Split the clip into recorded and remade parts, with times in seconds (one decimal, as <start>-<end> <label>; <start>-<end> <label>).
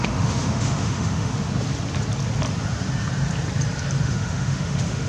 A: 0.0-1.3 remade; 1.3-4.0 recorded; 4.0-5.1 remade